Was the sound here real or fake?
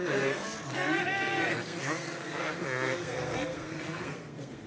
fake